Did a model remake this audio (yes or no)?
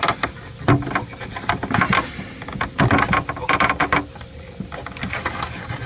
no